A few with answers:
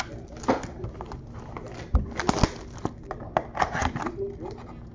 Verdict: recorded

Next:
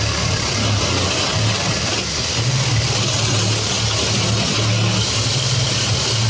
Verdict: recorded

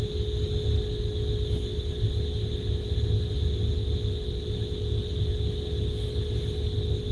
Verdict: recorded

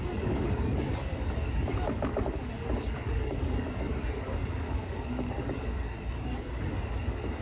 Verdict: remade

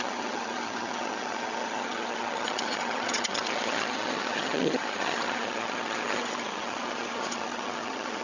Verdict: remade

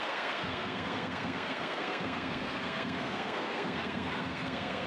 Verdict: remade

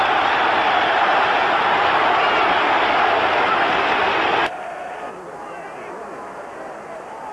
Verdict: recorded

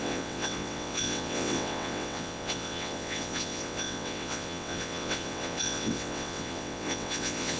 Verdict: remade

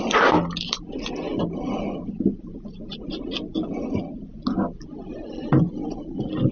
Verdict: recorded